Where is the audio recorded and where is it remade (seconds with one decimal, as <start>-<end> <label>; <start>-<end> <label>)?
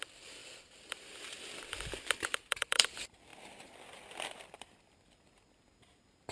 0.0-6.3 remade